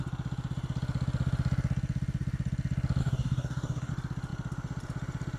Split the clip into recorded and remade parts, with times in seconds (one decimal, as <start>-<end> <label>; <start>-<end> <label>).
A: 0.0-3.0 recorded; 3.0-3.9 remade; 3.9-5.4 recorded